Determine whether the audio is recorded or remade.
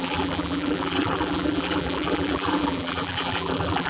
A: remade